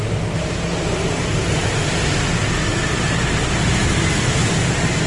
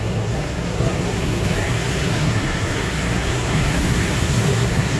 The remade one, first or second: second